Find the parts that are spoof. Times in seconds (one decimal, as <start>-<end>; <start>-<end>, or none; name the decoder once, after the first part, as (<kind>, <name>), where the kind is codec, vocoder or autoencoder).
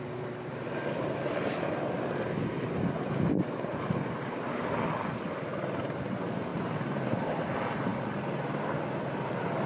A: 6.5-7.3 (vocoder, BigVGAN v2)